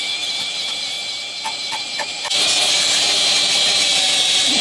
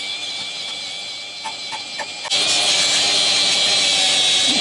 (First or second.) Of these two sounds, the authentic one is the second